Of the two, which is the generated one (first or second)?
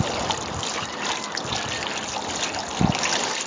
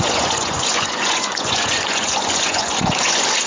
second